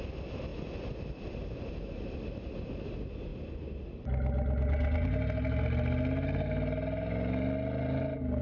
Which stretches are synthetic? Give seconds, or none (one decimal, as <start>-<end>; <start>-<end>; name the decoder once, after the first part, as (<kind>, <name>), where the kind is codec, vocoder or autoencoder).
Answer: none